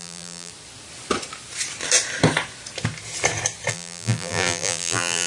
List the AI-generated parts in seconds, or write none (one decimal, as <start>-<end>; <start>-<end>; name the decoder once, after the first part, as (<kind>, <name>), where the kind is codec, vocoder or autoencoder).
0.0-0.5 (vocoder, BigVGAN v2); 3.7-5.3